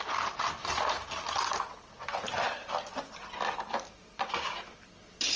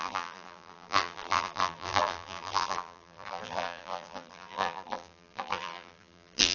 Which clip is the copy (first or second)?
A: second